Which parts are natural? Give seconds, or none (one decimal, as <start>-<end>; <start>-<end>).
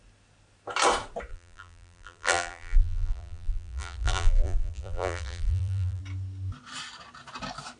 0.0-1.3; 6.0-7.8